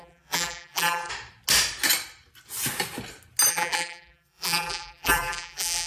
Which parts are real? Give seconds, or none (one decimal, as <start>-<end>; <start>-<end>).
1.1-3.5